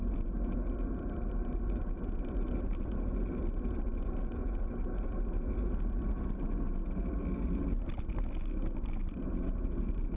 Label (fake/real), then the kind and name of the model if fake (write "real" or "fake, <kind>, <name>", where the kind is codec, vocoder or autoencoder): real